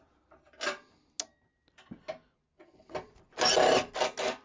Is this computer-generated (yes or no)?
no